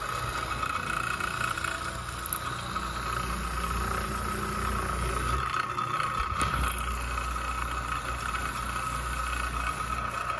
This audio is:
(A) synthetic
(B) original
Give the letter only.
B